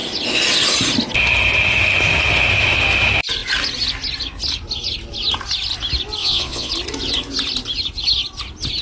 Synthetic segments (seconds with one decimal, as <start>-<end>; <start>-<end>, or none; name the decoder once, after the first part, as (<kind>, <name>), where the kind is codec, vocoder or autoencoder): 6.2-6.7 (vocoder, Vocos)